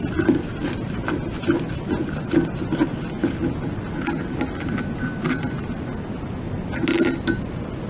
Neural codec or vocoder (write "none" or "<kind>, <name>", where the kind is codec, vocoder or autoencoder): none